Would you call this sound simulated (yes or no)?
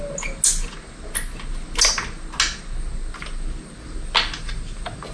no